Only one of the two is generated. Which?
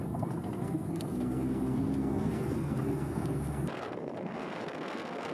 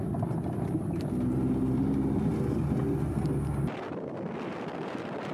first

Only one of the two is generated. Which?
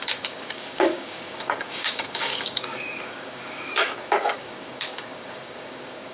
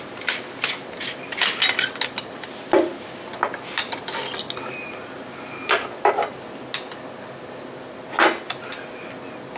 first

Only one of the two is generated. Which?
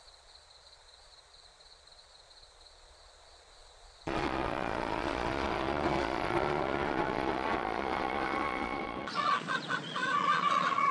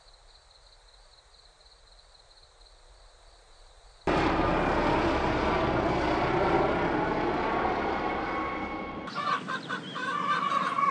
first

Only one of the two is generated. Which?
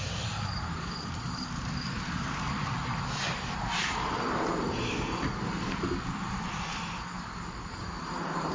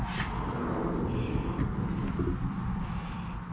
first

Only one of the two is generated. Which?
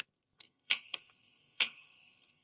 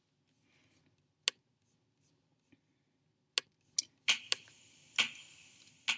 first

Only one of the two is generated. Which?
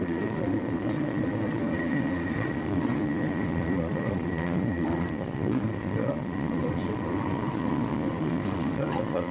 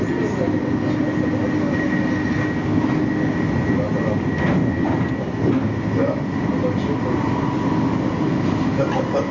first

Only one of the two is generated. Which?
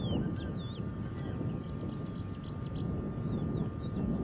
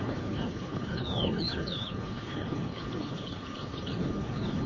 second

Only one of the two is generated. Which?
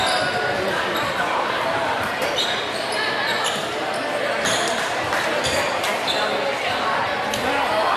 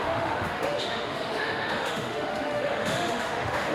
second